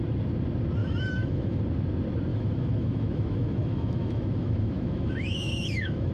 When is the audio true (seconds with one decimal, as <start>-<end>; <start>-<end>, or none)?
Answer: 0.0-0.8; 1.6-2.3